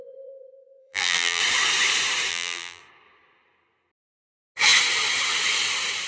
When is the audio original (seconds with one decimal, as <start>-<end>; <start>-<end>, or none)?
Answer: 0.0-0.8; 1.4-2.3; 2.8-6.1

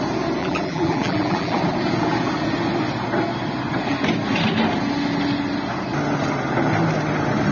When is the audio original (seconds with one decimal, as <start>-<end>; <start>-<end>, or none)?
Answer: 0.0-0.4; 1.6-7.5

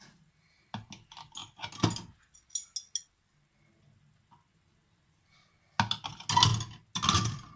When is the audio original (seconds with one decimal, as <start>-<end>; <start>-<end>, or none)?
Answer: 0.0-7.6

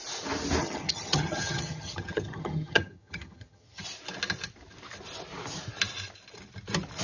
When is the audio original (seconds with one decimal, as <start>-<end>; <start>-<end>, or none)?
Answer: 0.0-0.6; 3.8-7.0

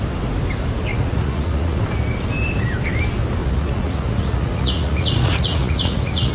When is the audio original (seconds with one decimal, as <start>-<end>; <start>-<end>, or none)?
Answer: 0.0-0.9; 1.8-3.4

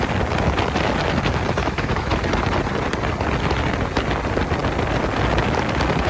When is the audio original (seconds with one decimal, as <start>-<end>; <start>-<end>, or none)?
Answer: 0.0-1.6; 2.2-6.1

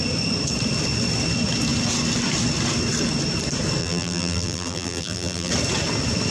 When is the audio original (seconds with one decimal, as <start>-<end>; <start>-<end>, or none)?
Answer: 0.0-3.8; 5.5-6.3

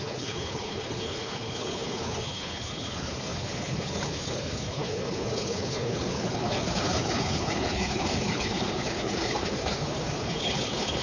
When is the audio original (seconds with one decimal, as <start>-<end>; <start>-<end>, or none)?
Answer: none